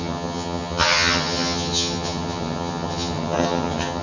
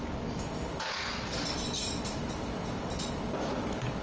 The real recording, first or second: second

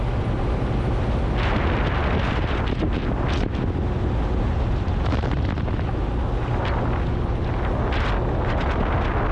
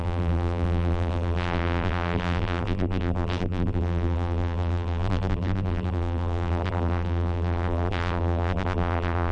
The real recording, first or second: first